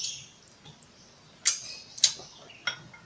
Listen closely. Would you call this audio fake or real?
real